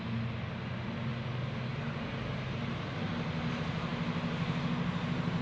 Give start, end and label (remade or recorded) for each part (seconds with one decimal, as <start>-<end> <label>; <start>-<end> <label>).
0.0-5.4 recorded